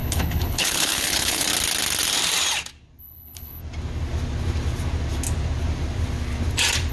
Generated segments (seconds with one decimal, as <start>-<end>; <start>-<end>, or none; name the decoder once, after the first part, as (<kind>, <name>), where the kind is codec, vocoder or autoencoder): 0.0-1.5 (codec, HILCodec); 3.0-3.6